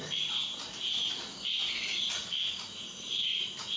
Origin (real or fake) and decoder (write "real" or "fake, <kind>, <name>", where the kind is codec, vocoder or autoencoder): real